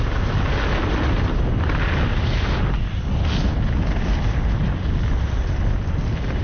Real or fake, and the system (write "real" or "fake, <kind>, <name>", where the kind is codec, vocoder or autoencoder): real